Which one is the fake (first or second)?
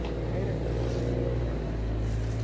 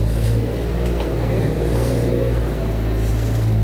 second